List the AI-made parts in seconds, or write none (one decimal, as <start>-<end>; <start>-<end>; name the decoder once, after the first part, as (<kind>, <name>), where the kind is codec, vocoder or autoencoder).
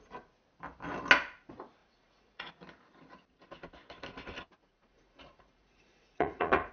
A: 1.8-2.5 (vocoder, Vocos); 4.6-6.7